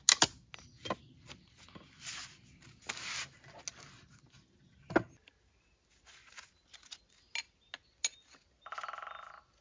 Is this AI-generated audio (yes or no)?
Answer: no